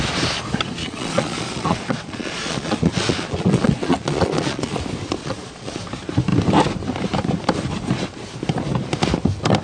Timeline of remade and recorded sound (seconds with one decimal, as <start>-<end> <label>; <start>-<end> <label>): 0.0-0.8 recorded; 0.8-4.8 remade; 4.8-5.2 recorded; 5.2-5.8 remade; 5.8-9.6 recorded